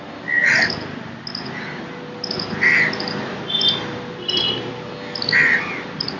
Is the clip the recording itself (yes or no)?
yes